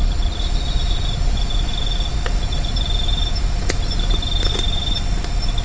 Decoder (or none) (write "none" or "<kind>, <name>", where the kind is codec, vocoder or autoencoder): none